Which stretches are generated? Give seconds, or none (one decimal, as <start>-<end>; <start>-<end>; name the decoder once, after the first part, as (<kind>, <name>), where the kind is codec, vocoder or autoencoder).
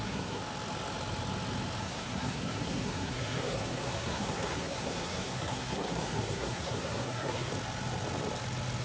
0.0-0.4 (codec, SNAC); 1.8-7.5